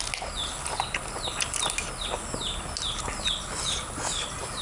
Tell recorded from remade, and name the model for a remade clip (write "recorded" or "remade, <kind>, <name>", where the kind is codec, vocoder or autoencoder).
recorded